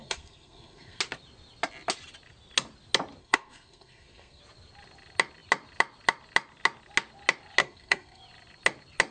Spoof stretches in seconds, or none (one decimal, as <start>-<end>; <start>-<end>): 0.0-1.0; 3.2-4.4; 7.6-8.2